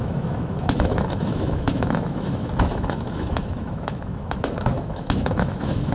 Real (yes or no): no